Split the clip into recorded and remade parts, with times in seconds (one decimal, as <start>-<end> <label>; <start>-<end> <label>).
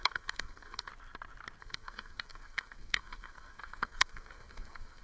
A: 0.0-0.9 remade; 0.9-1.6 recorded; 1.6-5.0 remade